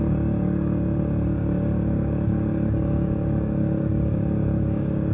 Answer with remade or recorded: remade